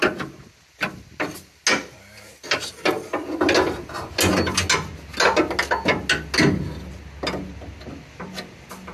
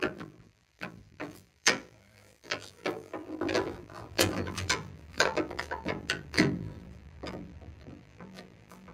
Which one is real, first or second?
first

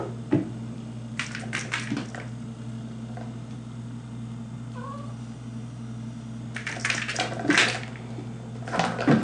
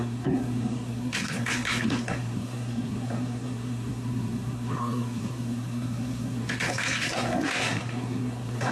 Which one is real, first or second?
first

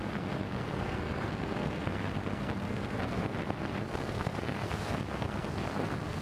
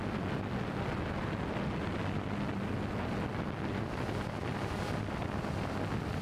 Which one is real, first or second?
second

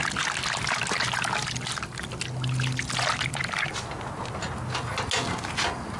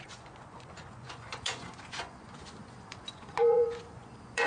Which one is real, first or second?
first